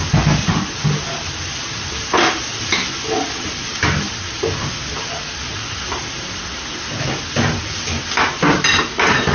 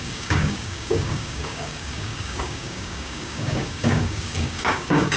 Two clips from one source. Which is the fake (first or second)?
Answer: second